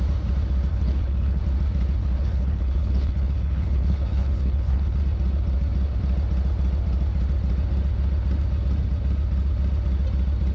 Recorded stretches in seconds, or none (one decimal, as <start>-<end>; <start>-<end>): 0.0-0.7; 1.4-2.0; 5.0-10.5